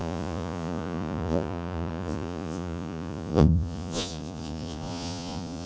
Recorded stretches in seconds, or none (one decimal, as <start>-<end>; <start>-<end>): none